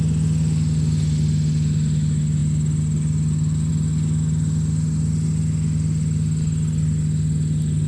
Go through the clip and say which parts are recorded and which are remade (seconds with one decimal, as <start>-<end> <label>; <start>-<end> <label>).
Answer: 0.0-7.9 recorded